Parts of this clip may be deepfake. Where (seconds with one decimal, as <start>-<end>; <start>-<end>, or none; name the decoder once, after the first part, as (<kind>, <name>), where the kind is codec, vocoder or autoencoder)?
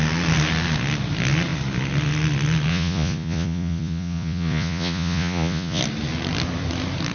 2.7-5.8 (vocoder, Vocos)